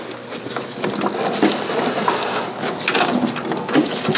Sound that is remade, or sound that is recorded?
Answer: recorded